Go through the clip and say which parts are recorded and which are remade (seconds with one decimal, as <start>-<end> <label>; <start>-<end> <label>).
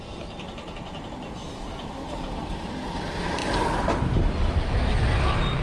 0.0-5.6 recorded